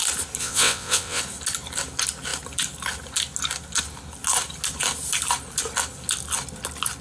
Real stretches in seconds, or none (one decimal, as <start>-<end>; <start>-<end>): 0.0-0.4; 1.2-7.0